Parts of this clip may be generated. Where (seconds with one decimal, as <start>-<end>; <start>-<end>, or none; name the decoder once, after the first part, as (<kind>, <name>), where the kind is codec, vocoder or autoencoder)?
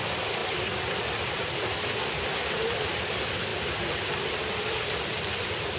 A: none